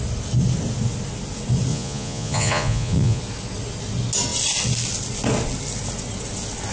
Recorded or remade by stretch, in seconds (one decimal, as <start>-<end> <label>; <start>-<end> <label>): 0.0-1.7 recorded; 1.7-3.2 remade; 3.2-6.7 recorded